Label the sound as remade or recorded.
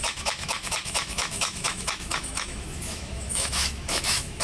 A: remade